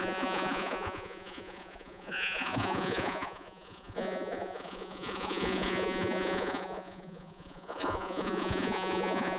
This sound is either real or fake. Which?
fake